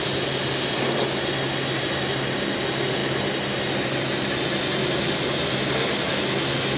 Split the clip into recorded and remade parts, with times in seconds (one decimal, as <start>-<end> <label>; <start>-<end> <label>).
0.0-6.8 recorded

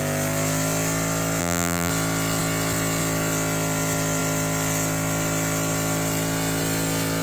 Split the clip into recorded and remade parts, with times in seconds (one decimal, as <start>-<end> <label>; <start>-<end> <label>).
0.0-1.4 recorded; 1.4-1.9 remade; 1.9-7.2 recorded

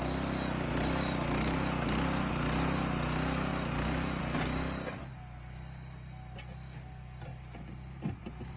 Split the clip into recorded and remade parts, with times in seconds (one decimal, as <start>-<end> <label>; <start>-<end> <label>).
0.0-3.5 recorded; 3.5-4.2 remade; 4.2-8.6 recorded

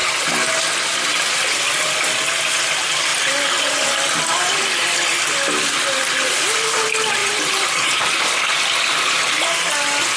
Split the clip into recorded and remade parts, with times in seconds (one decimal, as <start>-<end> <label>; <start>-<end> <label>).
0.0-7.2 recorded; 7.2-8.0 remade; 8.0-10.2 recorded

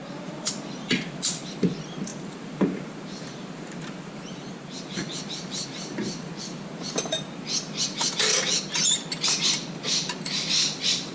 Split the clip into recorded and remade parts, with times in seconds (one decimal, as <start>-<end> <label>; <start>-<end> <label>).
0.0-0.5 remade; 0.5-2.1 recorded; 2.1-5.7 remade; 5.7-11.1 recorded

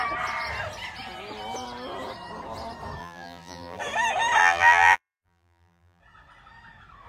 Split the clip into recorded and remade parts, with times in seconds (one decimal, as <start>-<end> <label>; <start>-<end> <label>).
0.0-3.0 recorded; 3.0-3.8 remade; 3.8-4.4 recorded; 4.4-6.0 remade; 6.0-7.1 recorded

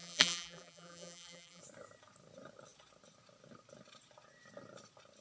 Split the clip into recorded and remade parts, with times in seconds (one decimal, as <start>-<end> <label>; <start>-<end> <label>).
0.0-1.6 remade; 1.6-5.2 recorded

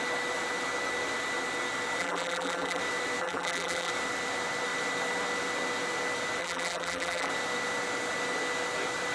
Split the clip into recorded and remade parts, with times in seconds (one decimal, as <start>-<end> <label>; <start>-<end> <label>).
0.0-2.0 recorded; 2.0-2.8 remade; 2.8-3.2 recorded; 3.2-3.9 remade; 3.9-6.4 recorded; 6.4-7.3 remade; 7.3-9.1 recorded